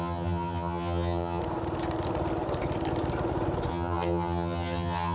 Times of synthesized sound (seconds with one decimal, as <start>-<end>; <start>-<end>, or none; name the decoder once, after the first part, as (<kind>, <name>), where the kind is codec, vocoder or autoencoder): 0.0-1.4 (vocoder, HiFi-GAN); 3.7-5.1